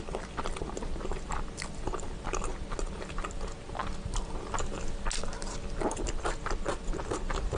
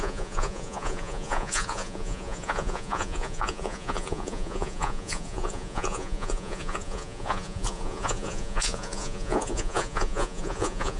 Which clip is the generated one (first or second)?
second